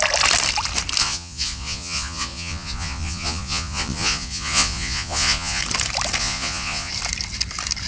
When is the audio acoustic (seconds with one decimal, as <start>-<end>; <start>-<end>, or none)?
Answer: 0.0-1.0; 5.6-6.2; 6.9-7.9